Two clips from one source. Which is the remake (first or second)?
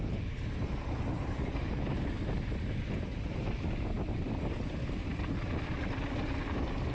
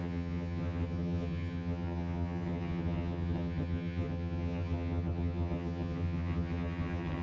second